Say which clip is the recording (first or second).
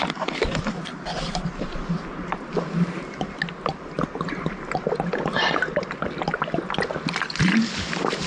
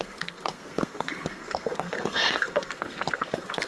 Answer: first